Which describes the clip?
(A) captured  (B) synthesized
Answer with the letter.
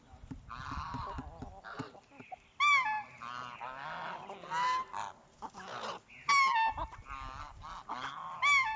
A